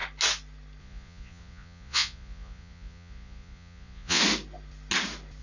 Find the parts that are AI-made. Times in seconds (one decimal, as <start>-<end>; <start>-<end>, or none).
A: 0.8-4.2